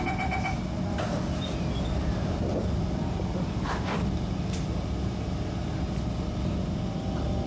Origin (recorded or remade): recorded